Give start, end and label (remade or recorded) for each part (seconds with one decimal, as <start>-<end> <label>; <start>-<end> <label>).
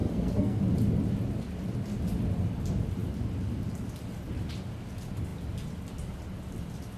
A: 0.0-0.6 remade; 0.6-7.0 recorded